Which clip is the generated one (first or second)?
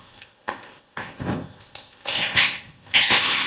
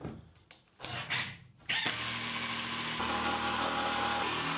first